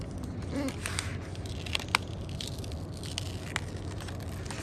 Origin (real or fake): real